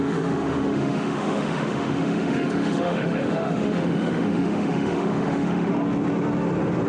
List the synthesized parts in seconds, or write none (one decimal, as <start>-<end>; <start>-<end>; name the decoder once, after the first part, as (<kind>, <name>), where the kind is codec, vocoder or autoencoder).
0.0-5.7 (autoencoder, DAC-VAE)